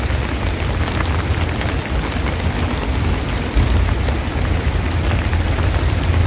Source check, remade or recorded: recorded